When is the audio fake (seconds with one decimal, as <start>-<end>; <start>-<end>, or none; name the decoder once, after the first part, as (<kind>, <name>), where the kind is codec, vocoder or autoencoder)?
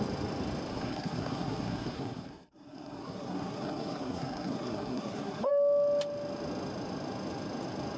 0.7-5.5 (codec, SNAC)